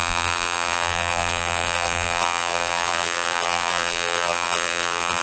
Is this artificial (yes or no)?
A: yes